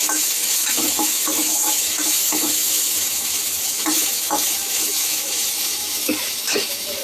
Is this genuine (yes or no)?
no